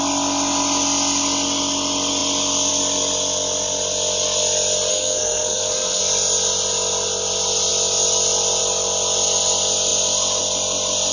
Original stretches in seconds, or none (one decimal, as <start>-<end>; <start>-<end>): 0.0-4.9; 6.0-11.1